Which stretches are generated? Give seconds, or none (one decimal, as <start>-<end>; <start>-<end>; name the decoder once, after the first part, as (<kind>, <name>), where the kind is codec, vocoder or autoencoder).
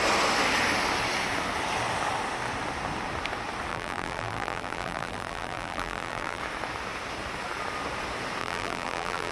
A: 3.7-6.4 (vocoder, BigVGAN v2); 8.4-9.3